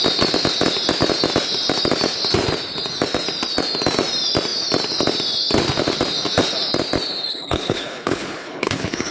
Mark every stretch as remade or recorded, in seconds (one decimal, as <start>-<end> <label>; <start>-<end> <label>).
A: 0.0-7.3 recorded; 7.3-9.1 remade